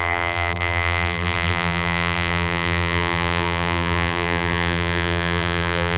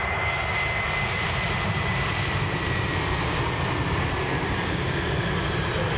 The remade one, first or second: first